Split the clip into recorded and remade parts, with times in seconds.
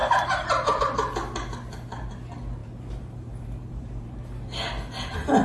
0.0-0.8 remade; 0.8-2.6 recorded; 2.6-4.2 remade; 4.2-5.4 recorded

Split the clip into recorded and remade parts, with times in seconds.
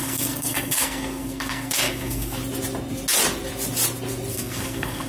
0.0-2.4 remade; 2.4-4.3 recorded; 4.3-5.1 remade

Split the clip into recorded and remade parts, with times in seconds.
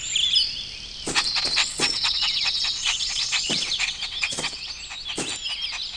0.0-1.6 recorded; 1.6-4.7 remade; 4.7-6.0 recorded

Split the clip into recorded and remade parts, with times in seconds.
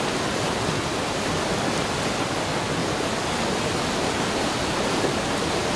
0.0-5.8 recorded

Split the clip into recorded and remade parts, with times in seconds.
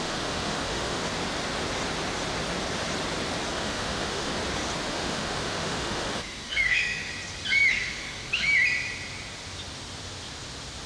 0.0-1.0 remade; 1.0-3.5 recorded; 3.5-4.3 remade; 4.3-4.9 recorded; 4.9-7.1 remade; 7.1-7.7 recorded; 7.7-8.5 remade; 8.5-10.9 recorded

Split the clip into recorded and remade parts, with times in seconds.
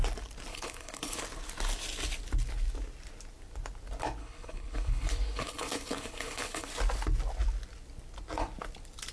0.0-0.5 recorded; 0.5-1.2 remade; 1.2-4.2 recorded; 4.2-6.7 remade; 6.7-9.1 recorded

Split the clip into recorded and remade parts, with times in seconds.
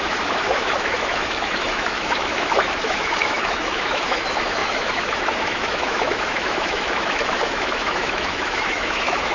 0.0-9.3 remade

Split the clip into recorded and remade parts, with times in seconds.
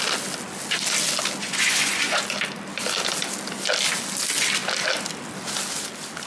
0.0-1.4 recorded; 1.4-2.2 remade; 2.2-6.3 recorded